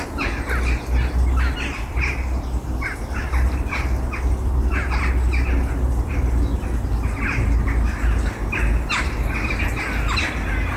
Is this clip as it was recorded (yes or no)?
yes